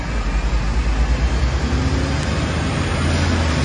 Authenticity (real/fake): real